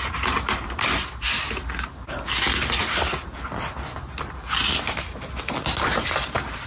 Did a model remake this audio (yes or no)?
no